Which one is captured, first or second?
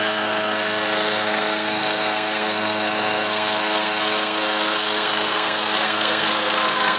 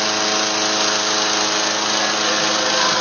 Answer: second